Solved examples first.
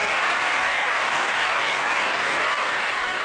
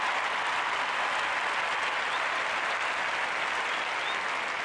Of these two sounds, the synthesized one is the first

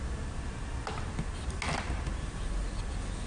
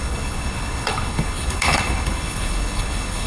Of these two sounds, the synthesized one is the second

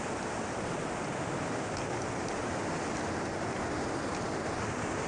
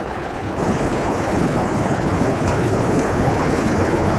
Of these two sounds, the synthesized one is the second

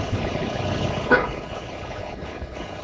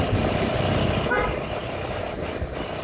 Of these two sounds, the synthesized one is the first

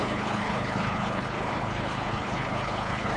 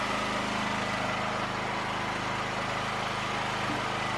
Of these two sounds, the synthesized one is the first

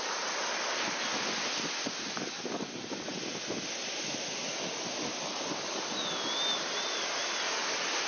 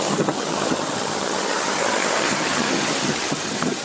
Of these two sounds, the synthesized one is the second